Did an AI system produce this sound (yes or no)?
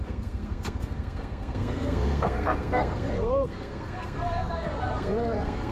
yes